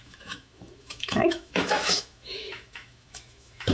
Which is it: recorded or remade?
remade